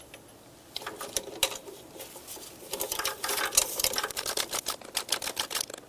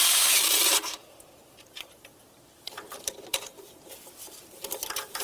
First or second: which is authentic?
first